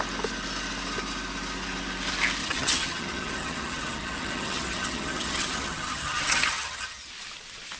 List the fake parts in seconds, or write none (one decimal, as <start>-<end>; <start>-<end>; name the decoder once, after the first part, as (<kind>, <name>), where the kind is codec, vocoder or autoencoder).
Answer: 2.4-7.1 (vocoder, HiFi-GAN)

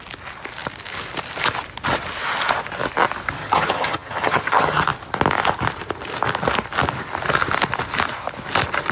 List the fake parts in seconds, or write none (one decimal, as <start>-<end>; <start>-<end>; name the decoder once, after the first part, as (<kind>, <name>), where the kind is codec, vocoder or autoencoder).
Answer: 3.4-4.8 (vocoder, HiFi-GAN)

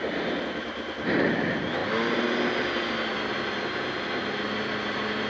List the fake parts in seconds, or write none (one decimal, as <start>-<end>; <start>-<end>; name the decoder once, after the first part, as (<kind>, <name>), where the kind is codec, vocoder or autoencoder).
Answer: none